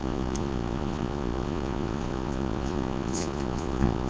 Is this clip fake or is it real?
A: fake